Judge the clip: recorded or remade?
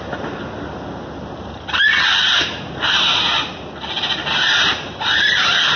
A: recorded